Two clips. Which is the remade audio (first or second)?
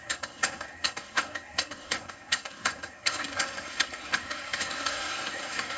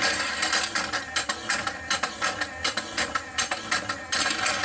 first